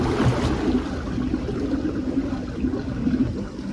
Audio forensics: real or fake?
real